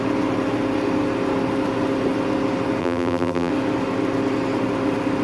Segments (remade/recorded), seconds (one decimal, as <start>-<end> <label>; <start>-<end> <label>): 0.0-2.8 recorded; 2.8-3.5 remade; 3.5-5.2 recorded